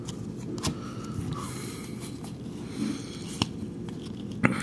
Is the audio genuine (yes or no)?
yes